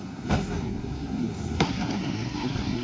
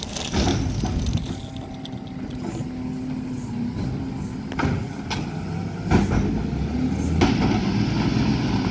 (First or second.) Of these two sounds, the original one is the second